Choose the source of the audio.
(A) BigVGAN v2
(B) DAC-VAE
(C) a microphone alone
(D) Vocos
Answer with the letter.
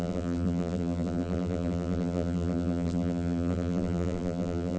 A